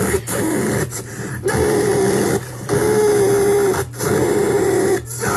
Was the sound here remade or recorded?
remade